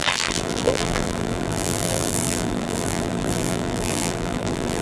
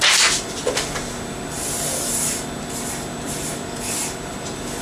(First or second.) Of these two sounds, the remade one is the first